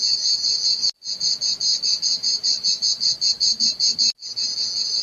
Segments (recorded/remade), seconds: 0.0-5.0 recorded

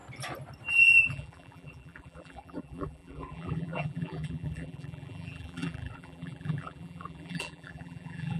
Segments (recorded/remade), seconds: 0.0-0.7 recorded; 0.7-8.4 remade

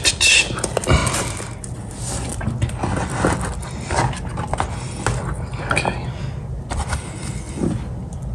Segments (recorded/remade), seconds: 0.0-8.3 recorded

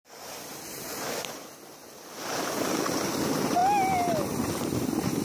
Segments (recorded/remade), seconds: 0.0-5.2 recorded

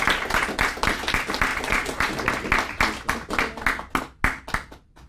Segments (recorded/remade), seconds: 0.0-1.5 recorded; 1.5-2.3 remade; 2.3-5.1 recorded

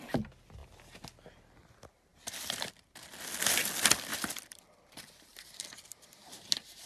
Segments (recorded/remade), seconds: 0.0-4.1 recorded; 4.1-5.0 remade; 5.0-6.9 recorded

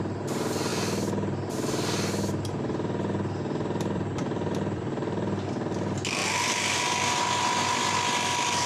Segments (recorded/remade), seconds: 0.0-0.7 recorded; 0.7-5.5 remade; 5.5-6.2 recorded; 6.2-7.2 remade; 7.2-8.7 recorded

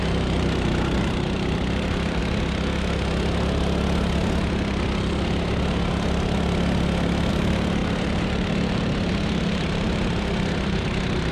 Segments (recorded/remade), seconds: 0.0-2.2 remade; 2.2-7.3 recorded; 7.3-11.3 remade